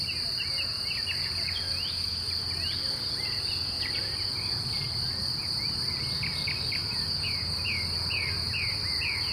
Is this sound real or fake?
real